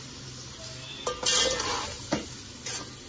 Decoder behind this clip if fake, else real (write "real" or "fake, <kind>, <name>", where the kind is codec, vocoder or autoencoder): real